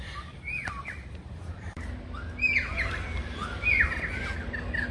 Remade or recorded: recorded